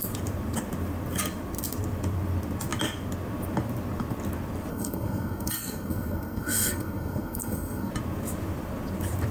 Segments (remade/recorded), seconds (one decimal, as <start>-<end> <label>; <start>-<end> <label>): 0.0-4.7 recorded; 4.7-7.9 remade; 7.9-9.3 recorded